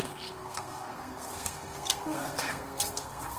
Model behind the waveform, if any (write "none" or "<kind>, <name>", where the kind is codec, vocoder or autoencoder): codec, SNAC